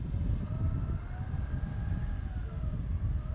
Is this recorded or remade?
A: recorded